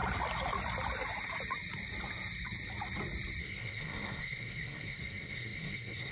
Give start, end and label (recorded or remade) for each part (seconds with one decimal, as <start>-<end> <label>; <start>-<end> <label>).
0.0-3.4 recorded; 3.4-6.1 remade